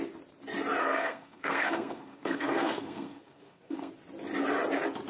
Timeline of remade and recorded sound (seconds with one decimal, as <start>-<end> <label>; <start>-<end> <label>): 0.0-0.8 recorded; 0.8-3.9 remade; 3.9-5.1 recorded